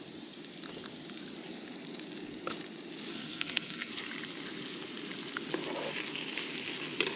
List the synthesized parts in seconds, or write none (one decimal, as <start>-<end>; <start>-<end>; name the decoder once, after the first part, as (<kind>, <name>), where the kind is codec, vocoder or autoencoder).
3.1-3.9 (codec, SNAC)